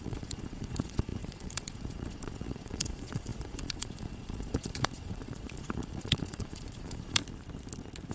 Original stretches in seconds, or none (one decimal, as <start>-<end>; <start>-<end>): 7.2-8.1